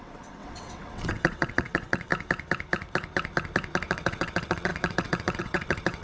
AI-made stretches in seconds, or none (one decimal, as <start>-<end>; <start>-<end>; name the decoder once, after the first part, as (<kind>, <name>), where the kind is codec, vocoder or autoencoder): 0.0-2.1 (vocoder, WaveNeXt); 3.9-6.0